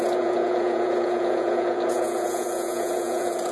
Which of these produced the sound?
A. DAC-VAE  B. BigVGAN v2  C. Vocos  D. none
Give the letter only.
C